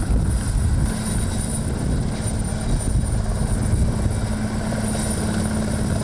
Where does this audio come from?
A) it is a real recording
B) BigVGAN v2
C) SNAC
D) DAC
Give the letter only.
A